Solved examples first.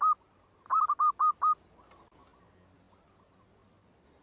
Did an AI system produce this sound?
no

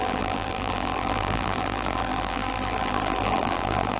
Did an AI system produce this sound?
yes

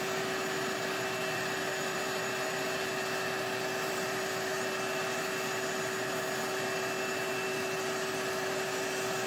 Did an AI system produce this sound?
yes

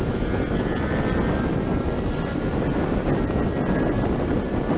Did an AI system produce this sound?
no